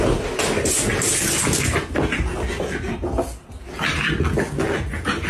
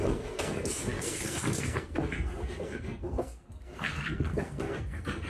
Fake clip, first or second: second